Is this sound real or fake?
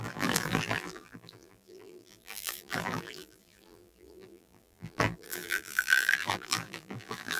fake